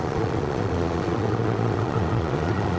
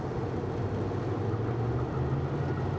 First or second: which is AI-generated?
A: first